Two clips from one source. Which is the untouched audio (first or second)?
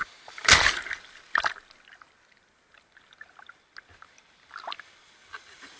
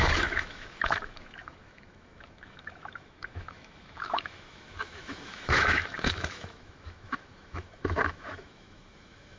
first